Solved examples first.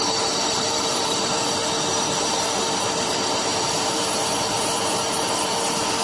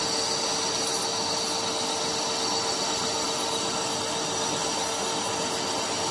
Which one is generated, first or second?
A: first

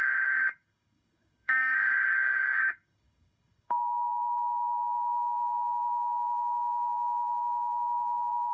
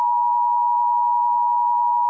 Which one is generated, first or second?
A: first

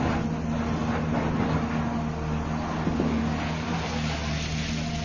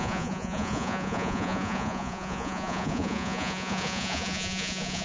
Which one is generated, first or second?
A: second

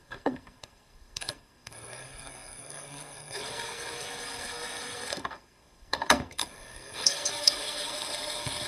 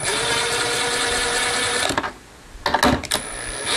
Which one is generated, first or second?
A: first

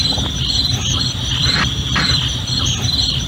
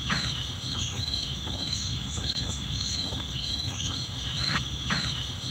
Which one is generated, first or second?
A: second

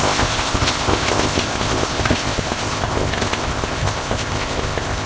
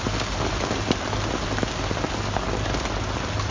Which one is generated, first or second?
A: first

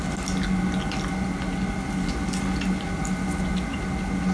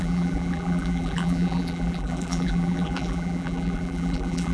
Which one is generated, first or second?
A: second